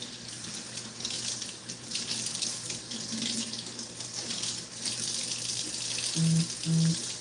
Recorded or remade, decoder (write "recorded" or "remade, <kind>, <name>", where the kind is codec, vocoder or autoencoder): recorded